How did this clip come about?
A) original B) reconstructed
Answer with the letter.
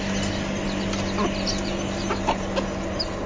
A